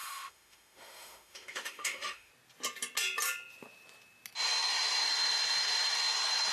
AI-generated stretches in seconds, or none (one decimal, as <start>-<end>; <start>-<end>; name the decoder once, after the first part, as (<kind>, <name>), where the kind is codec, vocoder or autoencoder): 0.0-2.3 (autoencoder, DAC-VAE)

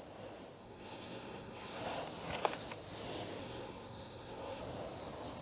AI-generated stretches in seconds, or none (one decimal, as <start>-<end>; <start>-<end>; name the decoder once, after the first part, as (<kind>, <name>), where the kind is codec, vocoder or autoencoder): 0.6-1.8 (codec, SNAC); 3.4-4.6

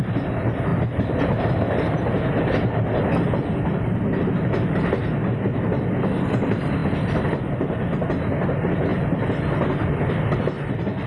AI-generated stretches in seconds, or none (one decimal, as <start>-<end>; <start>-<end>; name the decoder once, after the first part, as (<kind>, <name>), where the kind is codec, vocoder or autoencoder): 0.7-2.0 (vocoder, BigVGAN v2); 8.9-10.4

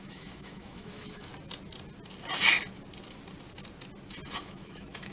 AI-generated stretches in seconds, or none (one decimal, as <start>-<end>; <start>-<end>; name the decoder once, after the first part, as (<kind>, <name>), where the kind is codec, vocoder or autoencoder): 0.0-1.3 (autoencoder, DAC-VAE); 4.4-5.1

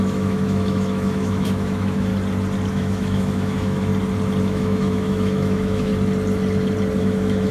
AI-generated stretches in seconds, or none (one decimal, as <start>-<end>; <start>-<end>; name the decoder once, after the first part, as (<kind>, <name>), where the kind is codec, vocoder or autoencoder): 0.0-2.1 (autoencoder, DAC-VAE); 2.7-3.9; 4.4-5.9; 7.0-7.5

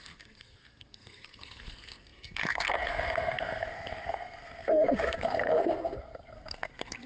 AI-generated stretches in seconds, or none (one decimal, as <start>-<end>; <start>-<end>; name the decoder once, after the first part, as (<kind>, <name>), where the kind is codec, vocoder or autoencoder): 0.0-7.1 (codec, SNAC)